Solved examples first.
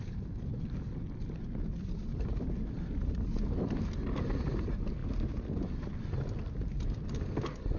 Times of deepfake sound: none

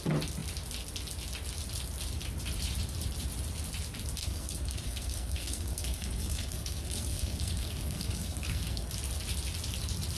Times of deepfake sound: 4.2-8.9 (codec, SNAC)

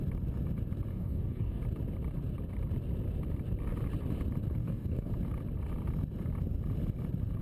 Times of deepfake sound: 0.9-1.6 (codec, DAC); 4.6-5.1

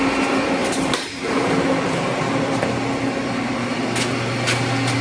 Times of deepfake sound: 0.6-2.2 (vocoder, BigVGAN v2)

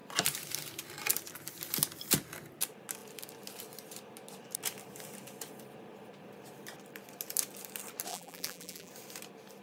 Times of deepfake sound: 8.1-8.9 (vocoder, BigVGAN v2)

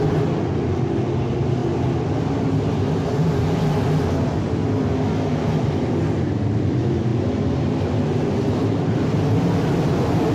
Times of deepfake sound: none